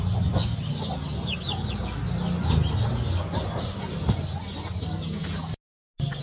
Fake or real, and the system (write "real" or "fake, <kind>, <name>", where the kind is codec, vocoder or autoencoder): real